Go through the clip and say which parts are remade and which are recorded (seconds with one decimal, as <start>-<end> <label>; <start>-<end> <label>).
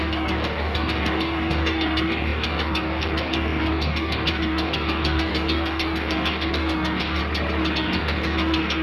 0.0-7.2 remade; 7.2-7.7 recorded; 7.7-8.8 remade